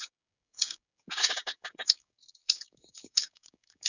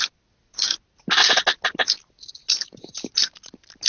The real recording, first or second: second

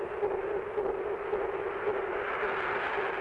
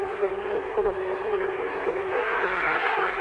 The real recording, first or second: first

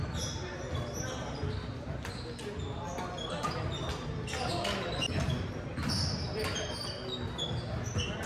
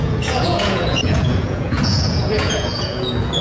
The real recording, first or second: first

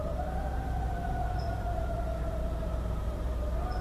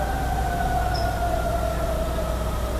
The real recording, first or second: second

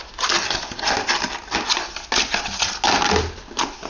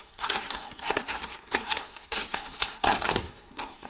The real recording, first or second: first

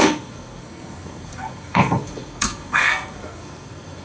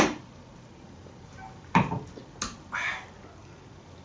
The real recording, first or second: second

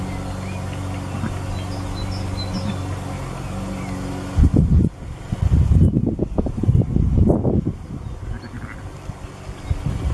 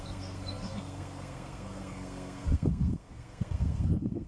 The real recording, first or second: first